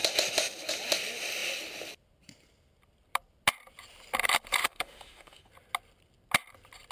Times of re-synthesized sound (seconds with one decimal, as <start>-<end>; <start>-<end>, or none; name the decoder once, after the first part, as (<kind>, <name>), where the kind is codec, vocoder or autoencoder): 4.6-5.5 (autoencoder, DAC-VAE)